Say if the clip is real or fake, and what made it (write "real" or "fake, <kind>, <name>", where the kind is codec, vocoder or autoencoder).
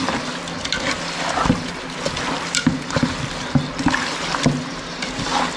real